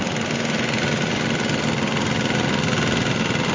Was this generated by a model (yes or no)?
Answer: no